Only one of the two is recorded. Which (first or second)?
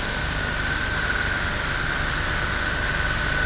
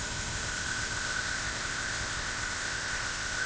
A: first